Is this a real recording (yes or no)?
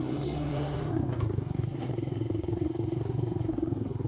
no